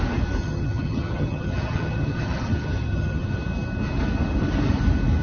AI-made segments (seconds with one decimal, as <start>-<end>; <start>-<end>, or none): 0.4-3.4